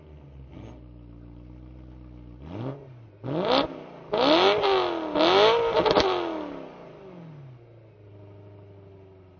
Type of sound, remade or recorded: recorded